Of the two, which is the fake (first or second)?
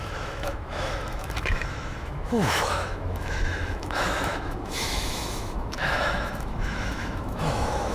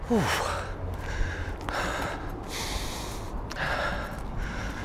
first